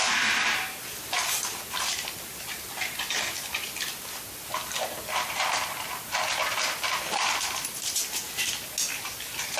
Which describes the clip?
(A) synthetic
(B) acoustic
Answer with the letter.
B